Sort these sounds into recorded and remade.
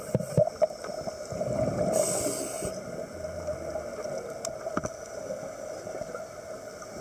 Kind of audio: recorded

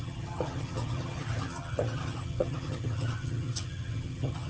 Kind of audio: remade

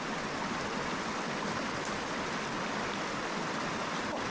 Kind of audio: recorded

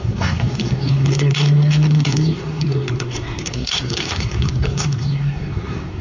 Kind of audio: remade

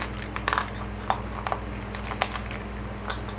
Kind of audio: recorded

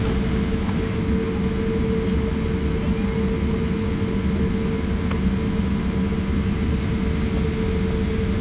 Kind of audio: recorded